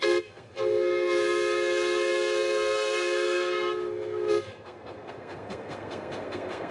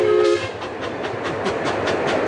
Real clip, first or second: second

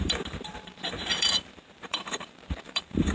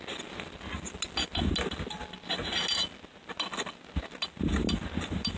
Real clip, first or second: second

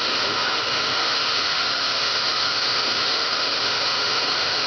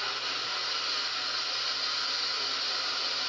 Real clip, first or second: second